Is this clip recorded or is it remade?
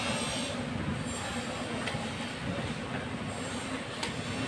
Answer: recorded